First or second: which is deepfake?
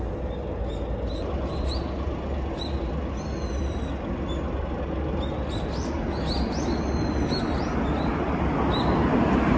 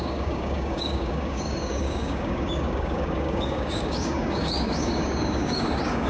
second